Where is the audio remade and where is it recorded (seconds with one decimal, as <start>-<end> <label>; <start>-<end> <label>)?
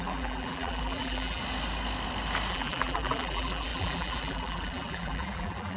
0.0-1.4 remade; 1.4-2.5 recorded; 2.5-5.8 remade